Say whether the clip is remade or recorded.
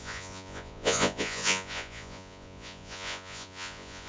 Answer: remade